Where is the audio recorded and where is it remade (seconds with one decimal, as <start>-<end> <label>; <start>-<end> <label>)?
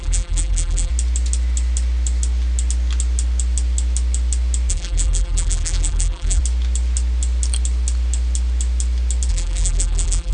0.0-0.9 remade; 0.9-4.7 recorded; 4.7-6.4 remade; 6.4-9.3 recorded; 9.3-10.3 remade